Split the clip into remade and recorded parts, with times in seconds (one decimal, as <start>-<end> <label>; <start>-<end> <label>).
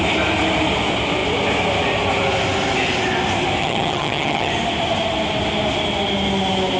0.0-3.6 recorded; 3.6-4.5 remade; 4.5-6.8 recorded